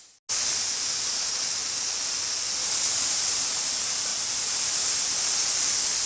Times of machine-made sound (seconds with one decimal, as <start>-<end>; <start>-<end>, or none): none